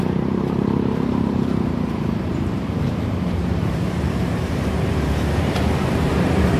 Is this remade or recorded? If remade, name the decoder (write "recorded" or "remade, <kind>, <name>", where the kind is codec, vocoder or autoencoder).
remade, vocoder, BigVGAN v2